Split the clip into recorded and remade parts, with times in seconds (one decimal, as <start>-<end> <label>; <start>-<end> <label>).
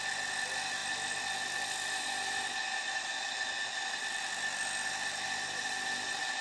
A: 0.0-6.4 recorded